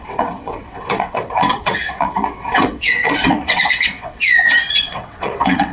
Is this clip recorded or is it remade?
remade